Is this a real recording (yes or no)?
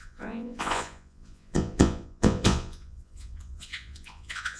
no